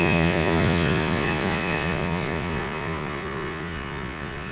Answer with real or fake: fake